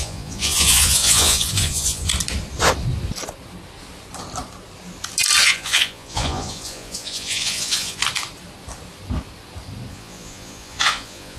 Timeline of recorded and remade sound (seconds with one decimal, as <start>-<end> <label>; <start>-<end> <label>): 0.0-2.1 remade; 2.1-5.4 recorded; 5.4-8.0 remade; 8.0-9.9 recorded; 9.9-11.4 remade